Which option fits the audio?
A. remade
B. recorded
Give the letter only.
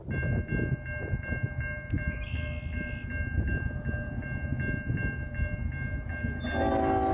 B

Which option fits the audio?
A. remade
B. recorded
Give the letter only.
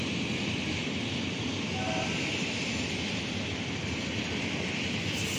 B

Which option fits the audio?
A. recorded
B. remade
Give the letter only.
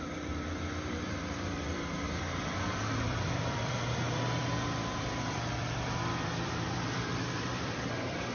B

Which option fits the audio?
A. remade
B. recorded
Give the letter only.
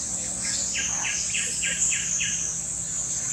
B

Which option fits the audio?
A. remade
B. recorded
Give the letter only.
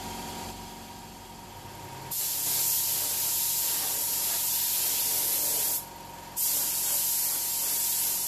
B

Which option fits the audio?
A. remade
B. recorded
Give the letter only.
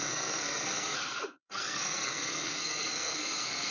A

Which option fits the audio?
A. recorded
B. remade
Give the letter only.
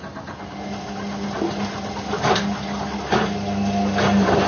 A